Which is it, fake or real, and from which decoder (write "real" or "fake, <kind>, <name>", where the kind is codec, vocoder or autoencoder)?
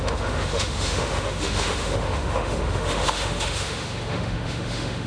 fake, autoencoder, DAC-VAE